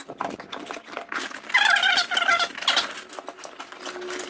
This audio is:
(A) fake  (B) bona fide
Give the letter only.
B